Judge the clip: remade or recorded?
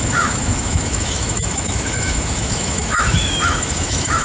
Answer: remade